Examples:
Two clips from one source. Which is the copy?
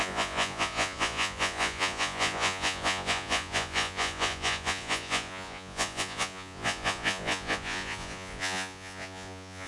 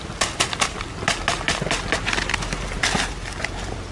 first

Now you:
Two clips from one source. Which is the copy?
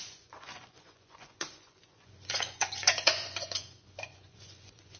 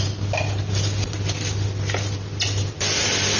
first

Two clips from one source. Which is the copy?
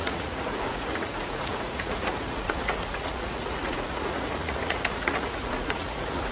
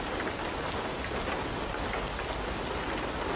first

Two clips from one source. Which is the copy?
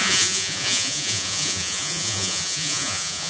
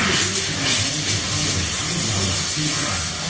first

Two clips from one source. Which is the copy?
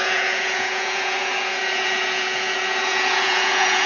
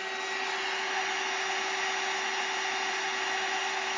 first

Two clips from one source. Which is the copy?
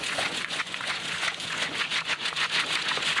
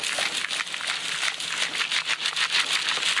first